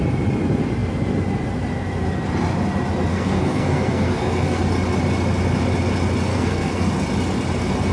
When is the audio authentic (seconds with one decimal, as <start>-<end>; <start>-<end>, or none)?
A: 0.0-3.1; 4.6-6.3; 6.9-7.9

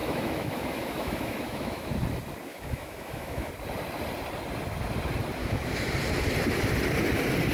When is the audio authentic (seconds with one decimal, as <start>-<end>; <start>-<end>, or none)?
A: 1.9-2.5; 3.5-5.4; 5.9-7.5

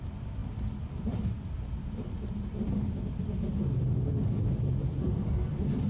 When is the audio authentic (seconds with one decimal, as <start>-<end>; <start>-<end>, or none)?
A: 0.0-5.9

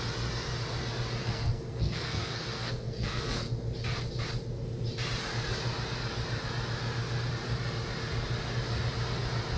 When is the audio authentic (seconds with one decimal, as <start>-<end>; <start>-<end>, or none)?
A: 0.0-1.2; 3.5-9.6

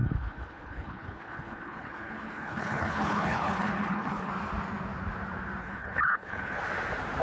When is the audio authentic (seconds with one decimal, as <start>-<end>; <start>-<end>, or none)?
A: 4.3-5.6; 6.6-7.2

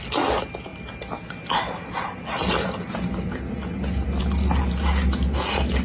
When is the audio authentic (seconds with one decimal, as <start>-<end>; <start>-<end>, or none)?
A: 0.0-5.8

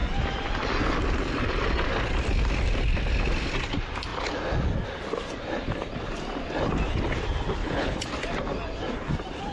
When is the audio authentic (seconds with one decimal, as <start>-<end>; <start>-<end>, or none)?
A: 0.0-7.6; 8.1-9.5

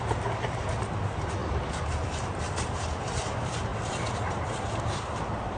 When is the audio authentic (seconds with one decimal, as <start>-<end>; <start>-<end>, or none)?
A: none